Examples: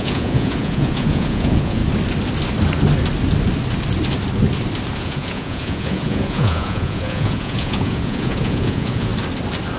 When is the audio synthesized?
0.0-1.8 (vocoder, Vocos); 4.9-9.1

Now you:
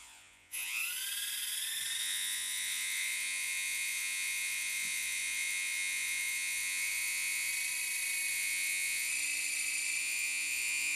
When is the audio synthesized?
0.0-0.8 (vocoder, Vocos); 2.0-7.5; 8.3-9.1; 10.0-11.0

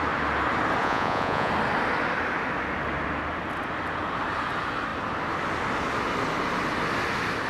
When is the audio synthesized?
0.8-1.5 (vocoder, Vocos)

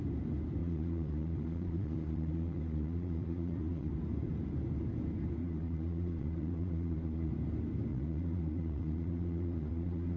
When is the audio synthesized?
0.6-3.9 (vocoder, Vocos); 5.4-7.3; 7.9-10.2

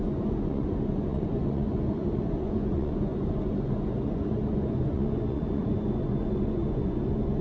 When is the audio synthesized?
0.0-7.4 (vocoder, Vocos)

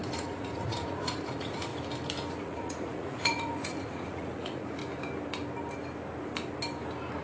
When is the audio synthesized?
0.0-1.7 (vocoder, Vocos); 2.3-4.8